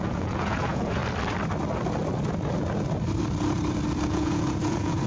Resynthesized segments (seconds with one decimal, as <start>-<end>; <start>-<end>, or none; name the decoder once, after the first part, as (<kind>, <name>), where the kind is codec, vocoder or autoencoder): 0.0-1.0 (vocoder, Vocos); 4.1-5.1